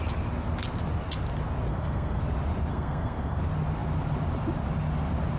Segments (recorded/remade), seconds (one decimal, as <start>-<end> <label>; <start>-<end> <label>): 0.0-1.7 recorded; 1.7-2.2 remade; 2.2-2.7 recorded; 2.7-3.4 remade; 3.4-5.4 recorded